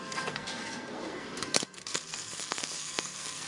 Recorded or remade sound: remade